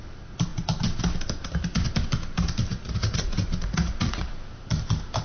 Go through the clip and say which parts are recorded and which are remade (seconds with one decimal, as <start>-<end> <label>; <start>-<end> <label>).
0.0-2.7 recorded; 2.7-4.3 remade; 4.3-5.2 recorded